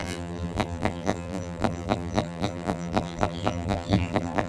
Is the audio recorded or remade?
remade